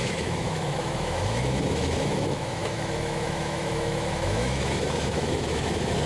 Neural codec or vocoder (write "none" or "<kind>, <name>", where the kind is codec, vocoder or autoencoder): autoencoder, DAC-VAE